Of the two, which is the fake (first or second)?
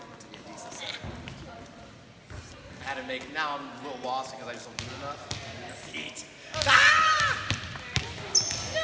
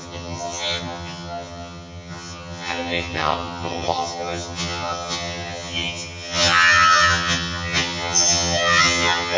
second